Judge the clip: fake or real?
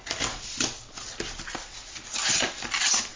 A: real